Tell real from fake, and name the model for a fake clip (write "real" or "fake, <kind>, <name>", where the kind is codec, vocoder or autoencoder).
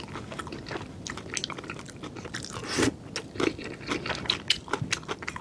real